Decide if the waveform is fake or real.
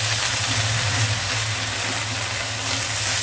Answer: real